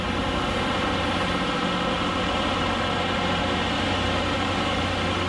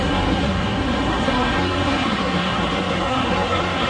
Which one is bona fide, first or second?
first